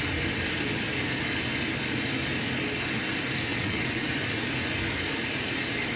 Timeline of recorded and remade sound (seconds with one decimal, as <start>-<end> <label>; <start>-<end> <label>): 0.0-3.5 recorded; 3.5-4.1 remade; 4.1-6.0 recorded